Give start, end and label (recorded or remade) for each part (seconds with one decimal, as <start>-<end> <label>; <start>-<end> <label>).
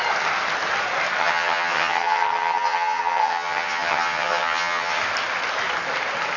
0.0-1.2 recorded; 1.2-5.0 remade; 5.0-6.4 recorded